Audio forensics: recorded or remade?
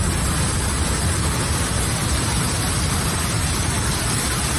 recorded